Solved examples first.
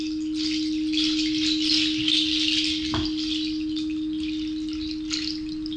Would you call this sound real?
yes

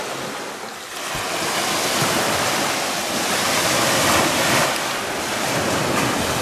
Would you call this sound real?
yes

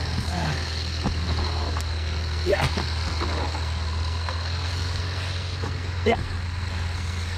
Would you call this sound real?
no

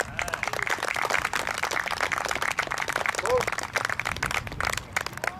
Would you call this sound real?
yes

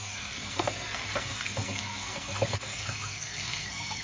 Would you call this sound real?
no